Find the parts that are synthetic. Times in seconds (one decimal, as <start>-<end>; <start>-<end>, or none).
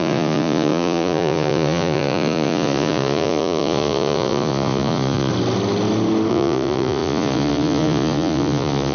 0.0-5.3; 6.3-8.9